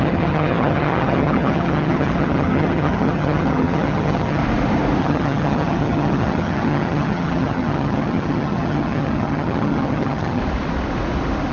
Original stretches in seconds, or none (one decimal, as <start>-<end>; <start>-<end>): 4.4-5.0; 10.4-11.5